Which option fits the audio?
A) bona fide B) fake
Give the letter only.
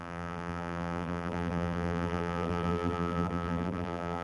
B